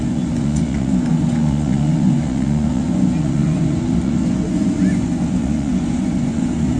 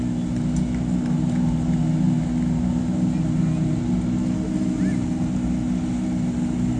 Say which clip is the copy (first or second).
first